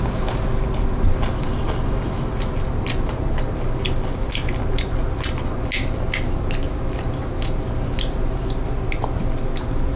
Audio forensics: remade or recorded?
recorded